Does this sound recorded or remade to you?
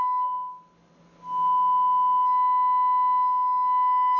recorded